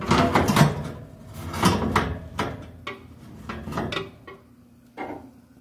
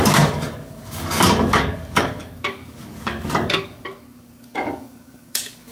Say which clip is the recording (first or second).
first